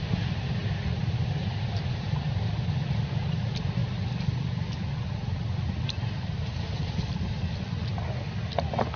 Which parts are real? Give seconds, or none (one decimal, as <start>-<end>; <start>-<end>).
0.0-1.0; 2.4-9.0